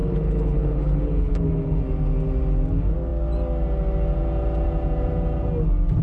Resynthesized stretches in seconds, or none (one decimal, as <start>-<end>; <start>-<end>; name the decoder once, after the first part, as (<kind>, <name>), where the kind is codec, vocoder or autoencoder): 0.0-1.8 (codec, HILCodec)